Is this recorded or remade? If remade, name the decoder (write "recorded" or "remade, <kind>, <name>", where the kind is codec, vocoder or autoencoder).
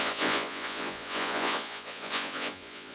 remade, vocoder, Vocos